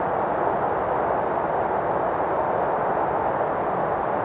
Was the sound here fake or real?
real